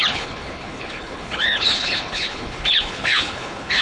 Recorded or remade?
remade